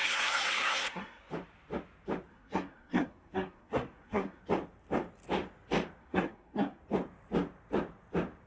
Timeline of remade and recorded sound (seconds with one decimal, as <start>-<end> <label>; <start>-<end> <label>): 0.0-1.3 remade; 1.3-2.3 recorded; 2.3-4.4 remade; 4.4-6.0 recorded; 6.0-6.8 remade; 6.8-8.5 recorded